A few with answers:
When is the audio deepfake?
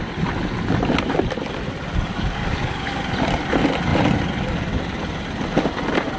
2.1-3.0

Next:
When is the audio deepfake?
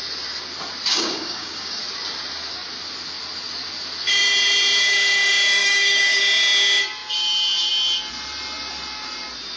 0.9-1.8; 5.6-6.2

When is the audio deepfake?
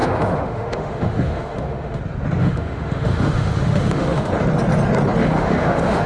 0.0-2.0; 2.4-4.3; 5.2-6.1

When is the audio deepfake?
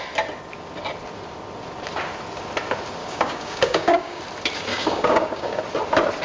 3.0-4.2; 4.7-5.6